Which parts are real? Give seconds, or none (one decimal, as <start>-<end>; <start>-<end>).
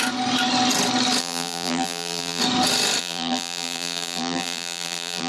0.0-1.2; 2.4-3.0